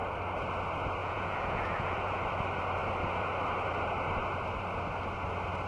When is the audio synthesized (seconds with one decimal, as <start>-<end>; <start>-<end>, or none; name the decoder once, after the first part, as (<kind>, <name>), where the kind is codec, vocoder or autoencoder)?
1.0-2.2 (vocoder, Vocos)